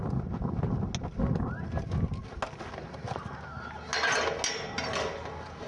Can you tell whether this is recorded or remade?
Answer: recorded